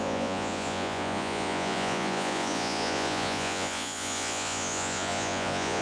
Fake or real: fake